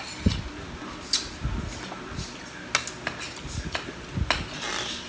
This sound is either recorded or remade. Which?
recorded